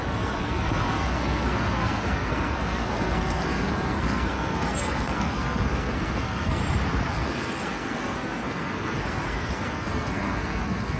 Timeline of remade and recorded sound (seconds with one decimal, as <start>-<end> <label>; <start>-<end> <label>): 0.0-6.6 remade; 6.6-7.1 recorded; 7.1-11.0 remade